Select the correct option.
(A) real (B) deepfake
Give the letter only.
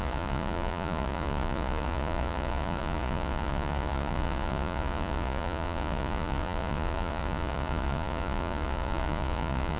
B